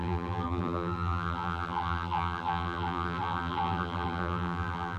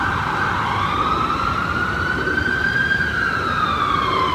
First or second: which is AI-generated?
first